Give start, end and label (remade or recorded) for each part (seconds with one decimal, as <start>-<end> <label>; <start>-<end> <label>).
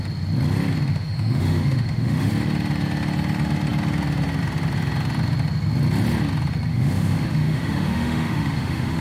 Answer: 0.0-0.9 recorded; 0.9-2.3 remade; 2.3-6.7 recorded; 6.7-9.0 remade